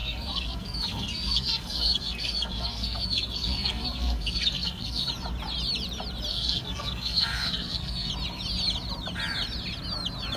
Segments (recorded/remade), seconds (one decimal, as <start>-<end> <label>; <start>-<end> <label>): 0.0-5.1 remade; 5.1-6.3 recorded; 6.3-8.1 remade; 8.1-10.4 recorded

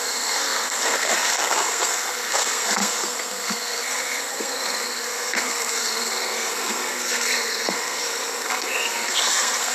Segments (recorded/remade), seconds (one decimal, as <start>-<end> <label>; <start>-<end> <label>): 0.0-9.7 remade

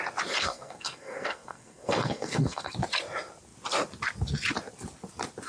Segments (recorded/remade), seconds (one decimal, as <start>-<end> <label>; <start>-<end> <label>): 0.0-0.4 recorded; 0.4-2.7 remade; 2.7-5.5 recorded